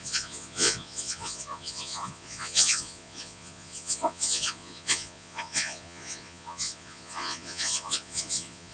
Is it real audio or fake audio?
fake